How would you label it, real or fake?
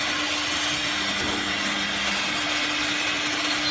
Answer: real